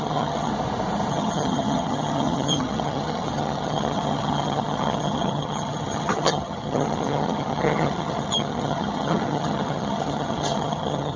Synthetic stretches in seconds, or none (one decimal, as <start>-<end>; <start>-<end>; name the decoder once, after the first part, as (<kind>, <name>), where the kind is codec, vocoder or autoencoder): 0.0-0.5 (vocoder, HiFi-GAN); 1.1-11.2